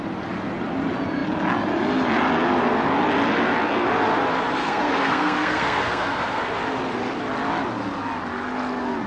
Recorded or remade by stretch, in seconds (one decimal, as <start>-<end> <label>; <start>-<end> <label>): 0.0-4.6 recorded; 4.6-6.4 remade; 6.4-9.1 recorded